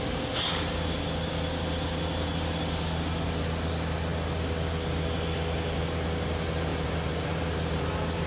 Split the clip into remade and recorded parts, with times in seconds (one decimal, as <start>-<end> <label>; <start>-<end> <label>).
0.0-6.7 recorded; 6.7-8.3 remade